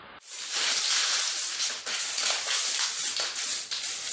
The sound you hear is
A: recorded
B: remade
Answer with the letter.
A